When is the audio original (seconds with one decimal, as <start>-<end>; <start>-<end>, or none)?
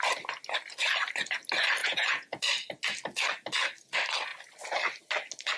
0.0-1.8; 2.4-5.6